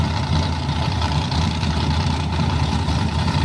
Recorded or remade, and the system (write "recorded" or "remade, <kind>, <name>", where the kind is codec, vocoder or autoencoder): remade, vocoder, BigVGAN v2